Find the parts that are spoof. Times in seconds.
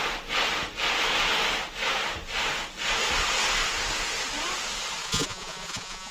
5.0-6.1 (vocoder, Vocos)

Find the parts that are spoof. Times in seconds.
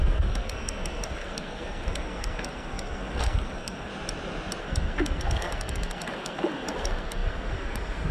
0.0-3.9 (codec, SNAC); 4.6-8.1